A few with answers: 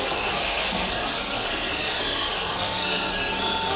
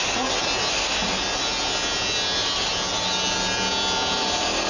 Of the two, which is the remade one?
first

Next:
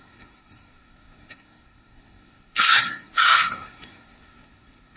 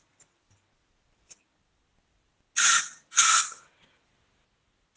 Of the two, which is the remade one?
first